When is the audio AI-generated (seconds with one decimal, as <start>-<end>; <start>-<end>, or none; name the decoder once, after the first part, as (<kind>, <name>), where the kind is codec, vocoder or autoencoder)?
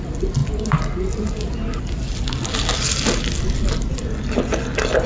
none